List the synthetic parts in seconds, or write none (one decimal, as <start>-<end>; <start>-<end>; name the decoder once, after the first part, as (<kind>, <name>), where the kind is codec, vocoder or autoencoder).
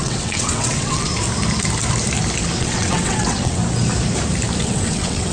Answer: 0.0-1.1 (vocoder, WaveNeXt); 2.6-3.6; 4.6-5.3